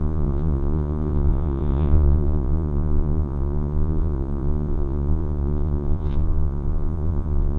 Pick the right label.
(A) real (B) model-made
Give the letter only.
B